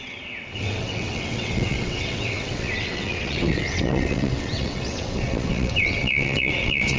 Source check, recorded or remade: remade